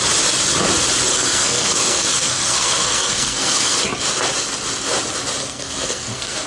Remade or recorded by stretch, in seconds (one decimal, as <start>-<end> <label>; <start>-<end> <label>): 0.0-1.1 recorded; 1.1-3.8 remade; 3.8-5.4 recorded; 5.4-6.5 remade